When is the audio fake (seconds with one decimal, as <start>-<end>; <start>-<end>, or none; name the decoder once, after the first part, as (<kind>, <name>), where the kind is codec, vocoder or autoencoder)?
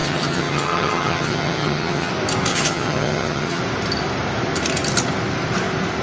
0.0-2.1 (vocoder, HiFi-GAN); 2.5-3.6